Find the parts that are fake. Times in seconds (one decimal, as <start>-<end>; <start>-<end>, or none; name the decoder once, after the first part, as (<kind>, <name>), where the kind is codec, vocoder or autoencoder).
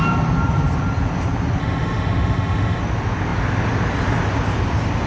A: 1.6-2.8 (autoencoder, DAC-VAE)